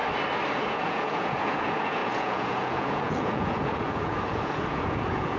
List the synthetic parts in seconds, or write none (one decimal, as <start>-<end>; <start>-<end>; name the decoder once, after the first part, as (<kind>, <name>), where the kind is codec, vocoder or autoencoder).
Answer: 0.6-5.4 (vocoder, Vocos)